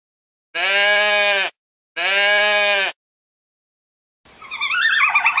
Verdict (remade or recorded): recorded